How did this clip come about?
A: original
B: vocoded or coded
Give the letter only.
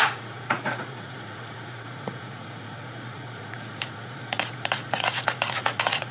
B